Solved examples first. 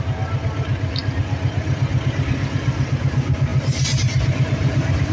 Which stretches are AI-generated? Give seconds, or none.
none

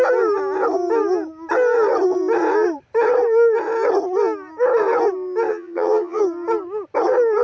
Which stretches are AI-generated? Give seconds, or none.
5.5-6.2 (vocoder, HiFi-GAN)

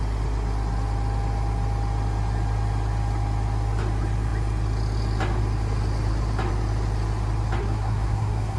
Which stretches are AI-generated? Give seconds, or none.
7.6-8.6 (codec, SNAC)

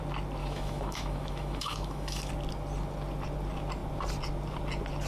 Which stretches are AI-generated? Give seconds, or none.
0.4-2.3 (autoencoder, DAC-VAE)

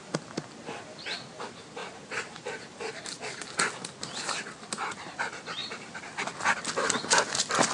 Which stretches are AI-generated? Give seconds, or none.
1.8-3.0 (vocoder, BigVGAN v2)

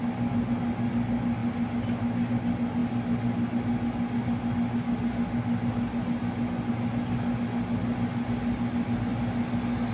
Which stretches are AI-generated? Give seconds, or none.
none